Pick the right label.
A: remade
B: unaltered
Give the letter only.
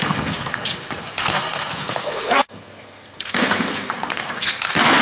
A